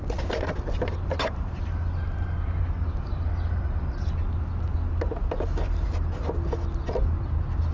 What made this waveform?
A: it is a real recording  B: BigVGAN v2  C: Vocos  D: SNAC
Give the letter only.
A